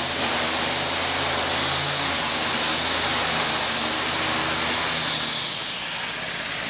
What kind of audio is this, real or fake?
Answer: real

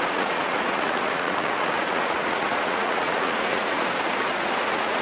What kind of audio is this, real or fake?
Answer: fake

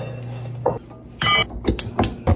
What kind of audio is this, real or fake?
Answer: real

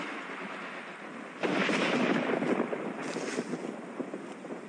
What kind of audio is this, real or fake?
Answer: real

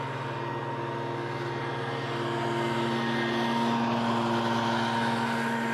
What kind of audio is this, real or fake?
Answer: real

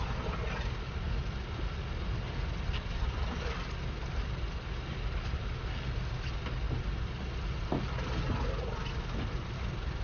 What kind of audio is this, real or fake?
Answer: real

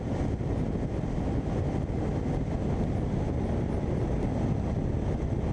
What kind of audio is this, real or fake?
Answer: real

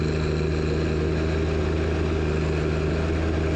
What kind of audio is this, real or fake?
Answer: real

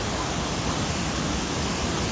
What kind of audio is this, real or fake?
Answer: real